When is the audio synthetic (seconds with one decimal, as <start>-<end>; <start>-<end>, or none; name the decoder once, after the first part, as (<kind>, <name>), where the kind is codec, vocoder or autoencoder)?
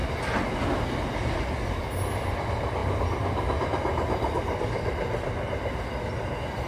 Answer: none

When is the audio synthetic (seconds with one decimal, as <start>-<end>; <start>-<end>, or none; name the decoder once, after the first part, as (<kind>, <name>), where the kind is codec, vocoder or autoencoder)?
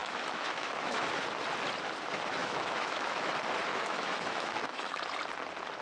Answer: 0.0-1.0 (autoencoder, DAC-VAE); 2.4-3.3; 3.7-5.0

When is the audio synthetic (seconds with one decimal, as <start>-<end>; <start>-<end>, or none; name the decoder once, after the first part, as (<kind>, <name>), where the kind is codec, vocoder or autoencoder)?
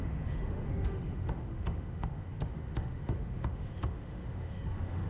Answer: 0.0-5.1 (autoencoder, DAC-VAE)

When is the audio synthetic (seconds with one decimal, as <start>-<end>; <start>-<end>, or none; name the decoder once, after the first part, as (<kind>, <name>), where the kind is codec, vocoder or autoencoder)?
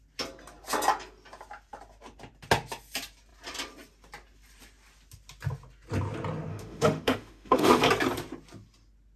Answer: 6.5-7.8 (autoencoder, DAC-VAE)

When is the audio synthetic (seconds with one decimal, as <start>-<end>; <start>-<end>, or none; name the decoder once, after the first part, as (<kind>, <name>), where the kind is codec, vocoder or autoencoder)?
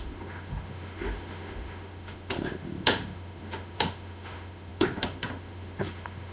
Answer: 0.0-6.3 (autoencoder, DAC-VAE)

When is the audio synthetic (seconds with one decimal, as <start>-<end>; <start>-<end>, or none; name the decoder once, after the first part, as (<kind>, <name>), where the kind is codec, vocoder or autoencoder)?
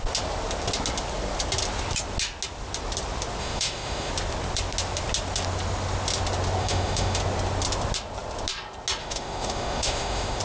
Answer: 3.4-4.1 (autoencoder, DAC-VAE); 6.6-7.2; 9.0-10.4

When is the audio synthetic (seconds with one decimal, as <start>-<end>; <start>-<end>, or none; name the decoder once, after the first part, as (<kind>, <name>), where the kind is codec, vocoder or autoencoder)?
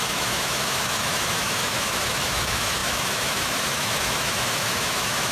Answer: 0.0-5.3 (autoencoder, DAC-VAE)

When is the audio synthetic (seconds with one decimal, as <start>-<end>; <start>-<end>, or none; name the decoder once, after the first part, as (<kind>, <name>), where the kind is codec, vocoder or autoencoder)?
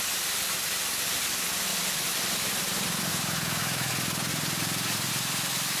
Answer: 3.1-3.9 (autoencoder, DAC-VAE)